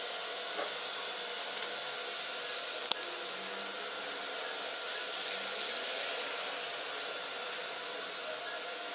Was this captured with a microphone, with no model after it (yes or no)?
yes